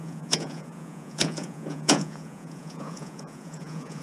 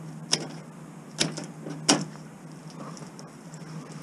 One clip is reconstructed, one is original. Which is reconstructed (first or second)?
first